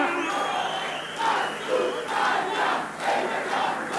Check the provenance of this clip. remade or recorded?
recorded